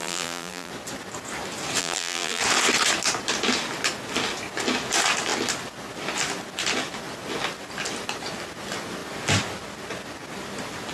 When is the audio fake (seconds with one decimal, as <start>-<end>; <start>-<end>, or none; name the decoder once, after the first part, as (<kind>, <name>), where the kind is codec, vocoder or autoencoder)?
0.0-0.7 (vocoder, BigVGAN v2); 1.8-2.4